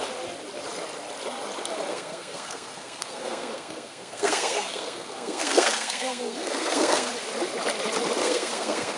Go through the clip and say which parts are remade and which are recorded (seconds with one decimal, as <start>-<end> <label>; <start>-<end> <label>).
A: 0.0-1.9 recorded; 1.9-7.1 remade; 7.1-8.2 recorded; 8.2-9.0 remade